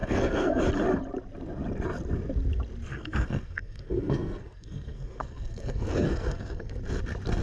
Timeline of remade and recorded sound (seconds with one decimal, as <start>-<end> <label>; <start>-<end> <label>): 0.0-0.6 remade; 0.6-2.9 recorded; 2.9-6.8 remade; 6.8-7.4 recorded